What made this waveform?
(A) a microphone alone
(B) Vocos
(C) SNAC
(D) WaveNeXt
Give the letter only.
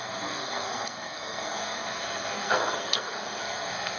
C